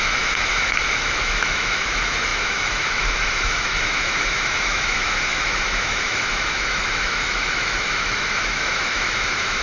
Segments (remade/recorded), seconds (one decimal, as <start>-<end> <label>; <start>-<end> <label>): 0.0-9.6 remade